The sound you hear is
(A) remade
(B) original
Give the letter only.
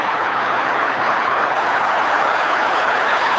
A